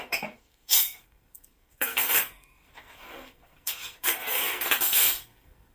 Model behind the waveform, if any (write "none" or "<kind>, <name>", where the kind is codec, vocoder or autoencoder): codec, SNAC